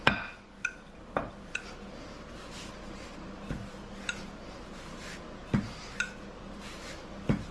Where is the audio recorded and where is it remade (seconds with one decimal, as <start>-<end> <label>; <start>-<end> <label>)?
0.0-7.5 recorded